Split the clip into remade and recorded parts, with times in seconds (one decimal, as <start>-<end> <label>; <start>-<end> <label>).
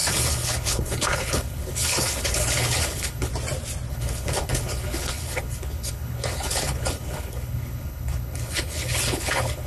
0.0-3.3 remade; 3.3-3.9 recorded; 3.9-9.7 remade